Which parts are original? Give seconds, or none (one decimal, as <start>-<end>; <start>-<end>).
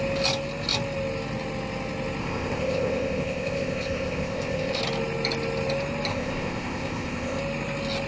0.0-2.2; 4.8-6.1; 7.4-8.1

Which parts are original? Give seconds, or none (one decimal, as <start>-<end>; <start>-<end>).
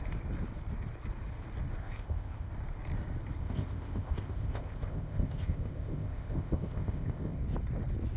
0.0-1.8; 2.5-3.4; 7.4-8.2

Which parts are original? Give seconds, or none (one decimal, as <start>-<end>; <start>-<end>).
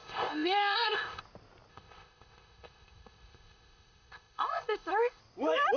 1.2-1.7; 5.2-5.8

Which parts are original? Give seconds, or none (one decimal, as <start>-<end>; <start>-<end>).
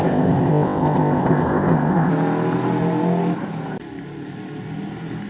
2.1-5.3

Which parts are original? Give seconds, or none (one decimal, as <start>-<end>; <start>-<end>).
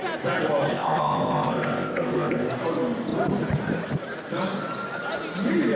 0.0-0.7; 2.5-5.8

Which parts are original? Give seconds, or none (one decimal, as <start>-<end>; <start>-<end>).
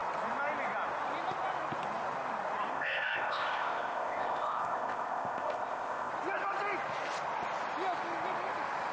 0.0-2.7; 6.1-8.9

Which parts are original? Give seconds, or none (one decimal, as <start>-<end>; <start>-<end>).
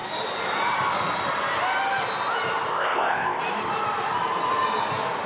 0.0-2.7; 3.4-5.3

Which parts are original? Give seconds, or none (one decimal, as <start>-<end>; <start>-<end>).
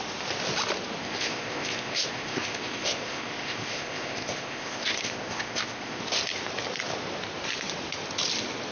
0.0-1.0; 6.0-8.7